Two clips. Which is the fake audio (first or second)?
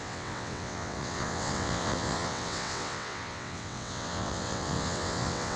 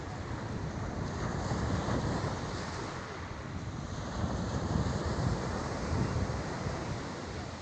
first